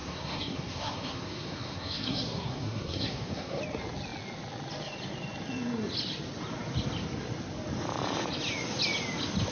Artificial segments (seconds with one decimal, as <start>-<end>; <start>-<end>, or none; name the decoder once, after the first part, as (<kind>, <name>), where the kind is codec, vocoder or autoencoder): 0.0-3.6 (codec, SNAC)